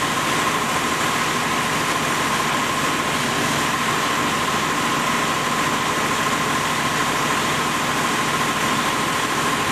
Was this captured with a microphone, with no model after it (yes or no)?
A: yes